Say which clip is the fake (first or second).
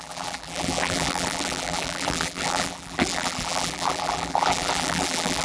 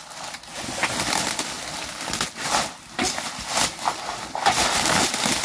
first